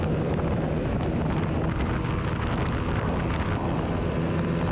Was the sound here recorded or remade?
recorded